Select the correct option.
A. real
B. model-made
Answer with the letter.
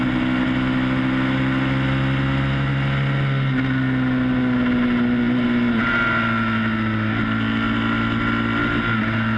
A